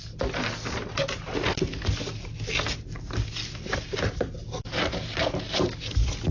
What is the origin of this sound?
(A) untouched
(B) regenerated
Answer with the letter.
A